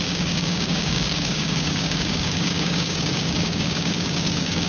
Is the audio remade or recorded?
remade